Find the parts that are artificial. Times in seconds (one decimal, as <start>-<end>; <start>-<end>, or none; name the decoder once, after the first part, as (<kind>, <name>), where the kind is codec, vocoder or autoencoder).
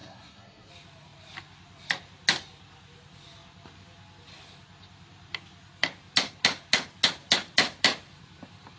0.0-0.7 (codec, SNAC)